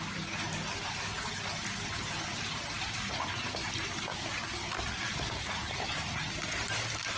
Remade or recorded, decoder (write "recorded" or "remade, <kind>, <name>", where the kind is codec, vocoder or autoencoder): recorded